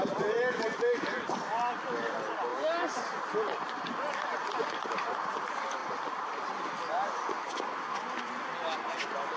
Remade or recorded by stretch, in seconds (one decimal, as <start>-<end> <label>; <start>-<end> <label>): 0.0-9.4 recorded